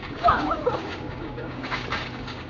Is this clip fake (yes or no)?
yes